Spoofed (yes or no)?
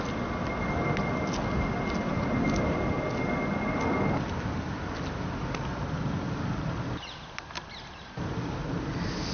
no